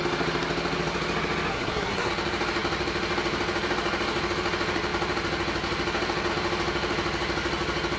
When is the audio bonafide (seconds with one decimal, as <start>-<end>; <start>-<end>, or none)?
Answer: 0.0-1.5; 2.1-8.0